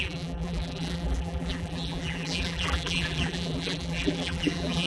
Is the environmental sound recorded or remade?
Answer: remade